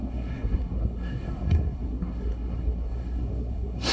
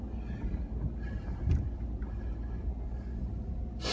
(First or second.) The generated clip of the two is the first